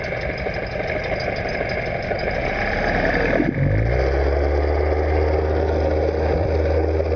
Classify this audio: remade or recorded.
recorded